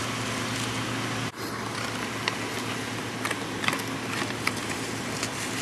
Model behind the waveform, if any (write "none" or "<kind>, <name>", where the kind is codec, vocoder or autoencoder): none